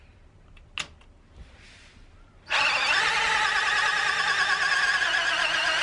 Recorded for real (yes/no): yes